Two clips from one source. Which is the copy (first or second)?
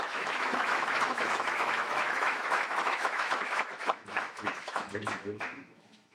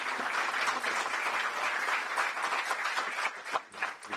first